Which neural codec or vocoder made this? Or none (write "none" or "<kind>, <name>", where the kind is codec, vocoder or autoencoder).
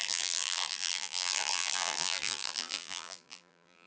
vocoder, BigVGAN v2